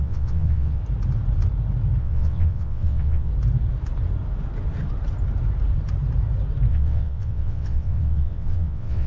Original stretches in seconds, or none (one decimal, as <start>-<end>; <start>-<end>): 0.8-2.0; 3.3-6.7